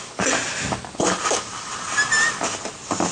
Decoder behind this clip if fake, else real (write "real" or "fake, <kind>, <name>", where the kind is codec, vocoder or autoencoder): real